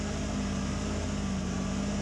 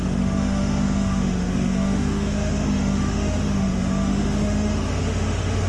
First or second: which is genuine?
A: first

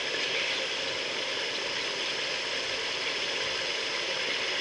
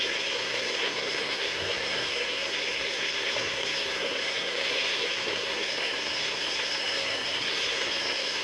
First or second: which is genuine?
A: first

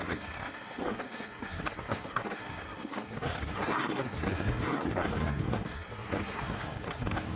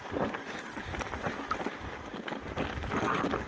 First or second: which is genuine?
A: second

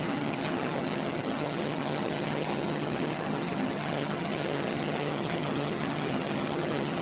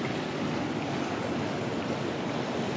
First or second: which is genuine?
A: second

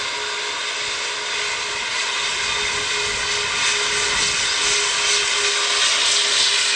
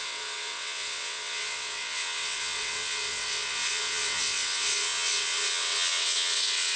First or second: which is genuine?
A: first